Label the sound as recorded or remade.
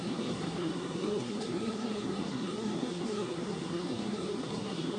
remade